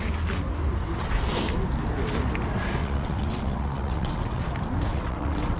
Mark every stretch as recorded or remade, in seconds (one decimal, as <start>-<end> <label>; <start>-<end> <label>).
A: 0.0-2.8 recorded; 2.8-4.4 remade; 4.4-4.9 recorded; 4.9-5.6 remade